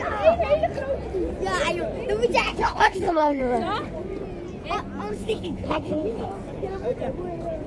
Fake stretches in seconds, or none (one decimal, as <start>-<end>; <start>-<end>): 2.5-3.4; 5.1-6.3